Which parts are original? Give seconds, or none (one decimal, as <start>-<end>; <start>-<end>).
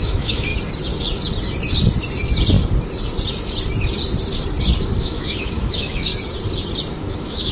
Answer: 0.5-5.0; 6.1-6.9